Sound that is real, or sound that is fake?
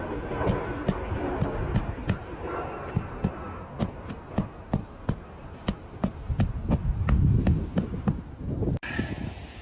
real